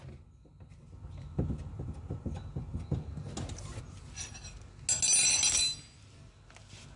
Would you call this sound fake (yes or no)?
no